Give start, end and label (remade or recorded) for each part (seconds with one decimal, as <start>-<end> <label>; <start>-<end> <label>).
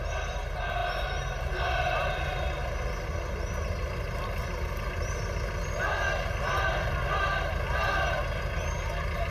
0.0-9.3 recorded